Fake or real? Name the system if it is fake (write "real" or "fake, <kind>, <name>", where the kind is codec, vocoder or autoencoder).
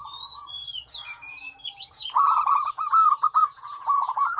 fake, vocoder, Vocos